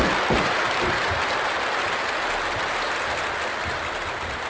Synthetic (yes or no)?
no